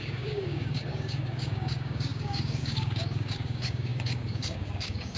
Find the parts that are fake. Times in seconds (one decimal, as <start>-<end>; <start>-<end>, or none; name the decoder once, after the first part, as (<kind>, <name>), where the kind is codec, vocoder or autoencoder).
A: 0.0-5.2 (codec, DAC)